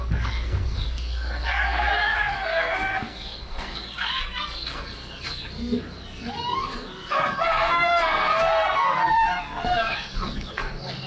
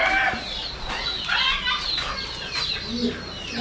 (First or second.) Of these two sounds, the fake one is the first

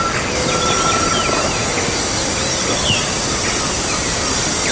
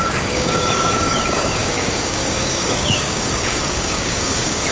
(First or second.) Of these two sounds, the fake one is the second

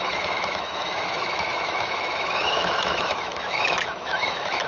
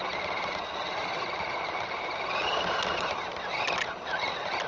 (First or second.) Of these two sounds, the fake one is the first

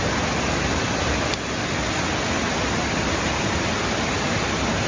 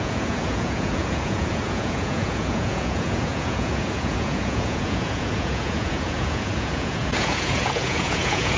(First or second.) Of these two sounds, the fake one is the second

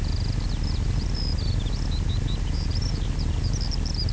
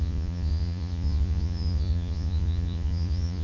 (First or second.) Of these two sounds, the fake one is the second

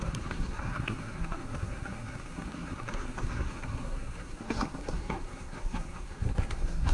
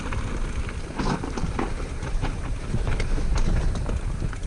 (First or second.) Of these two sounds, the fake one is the first